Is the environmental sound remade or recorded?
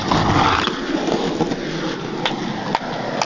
recorded